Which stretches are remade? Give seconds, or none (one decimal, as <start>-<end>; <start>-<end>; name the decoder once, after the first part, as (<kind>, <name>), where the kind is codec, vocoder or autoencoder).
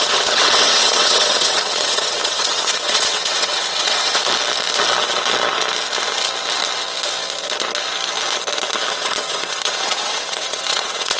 0.0-4.2 (vocoder, WaveNeXt); 8.9-11.2